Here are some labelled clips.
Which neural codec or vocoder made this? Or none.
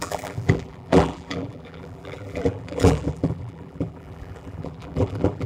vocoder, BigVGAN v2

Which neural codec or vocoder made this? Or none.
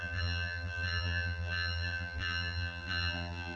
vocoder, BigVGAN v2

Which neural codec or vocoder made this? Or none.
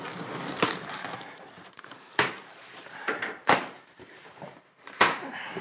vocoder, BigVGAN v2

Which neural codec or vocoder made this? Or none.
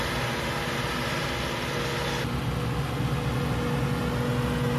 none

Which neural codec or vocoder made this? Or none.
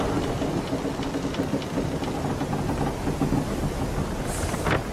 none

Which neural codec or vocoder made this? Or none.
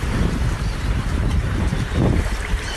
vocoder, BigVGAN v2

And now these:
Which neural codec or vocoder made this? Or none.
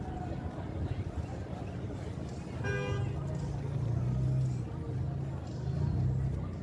none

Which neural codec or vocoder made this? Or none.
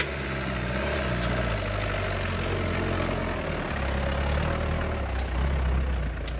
none